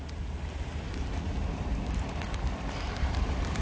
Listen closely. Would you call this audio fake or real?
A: real